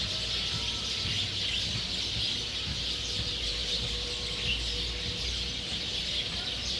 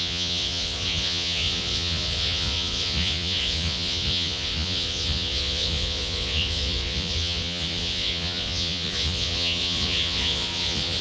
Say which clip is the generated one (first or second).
second